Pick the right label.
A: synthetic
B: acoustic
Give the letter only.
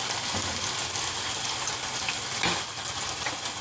B